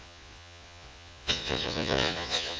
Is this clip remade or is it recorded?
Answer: remade